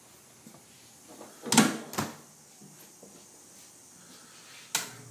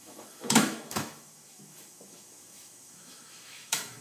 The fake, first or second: second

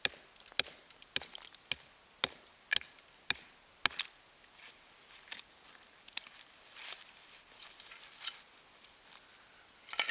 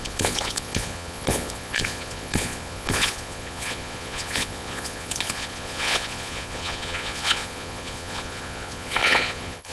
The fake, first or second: second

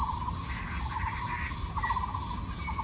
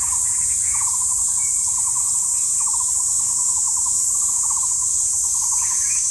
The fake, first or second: second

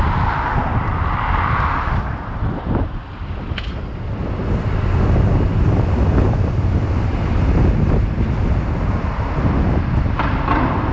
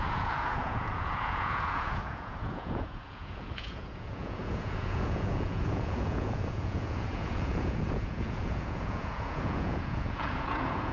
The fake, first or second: second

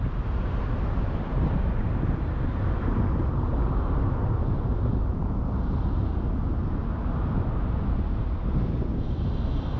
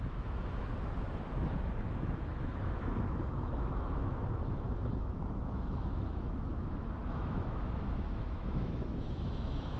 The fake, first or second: second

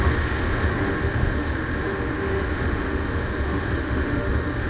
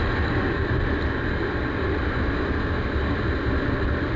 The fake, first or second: first